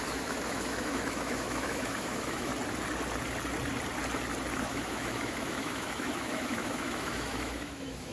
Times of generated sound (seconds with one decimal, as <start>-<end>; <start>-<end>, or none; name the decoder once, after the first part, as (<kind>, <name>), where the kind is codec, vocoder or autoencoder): 0.0-2.5 (autoencoder, DAC-VAE); 4.6-8.1